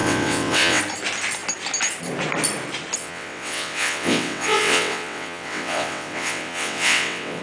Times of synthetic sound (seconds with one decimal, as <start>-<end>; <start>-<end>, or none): 0.0-0.8; 3.0-7.4